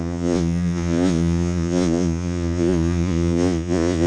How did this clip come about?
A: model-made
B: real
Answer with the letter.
A